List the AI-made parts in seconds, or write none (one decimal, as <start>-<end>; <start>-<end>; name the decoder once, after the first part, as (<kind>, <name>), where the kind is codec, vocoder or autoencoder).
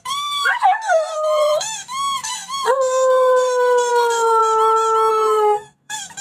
0.0-4.4 (codec, SNAC); 5.1-6.2